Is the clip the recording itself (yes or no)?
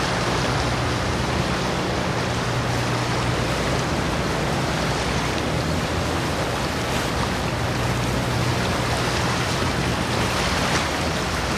yes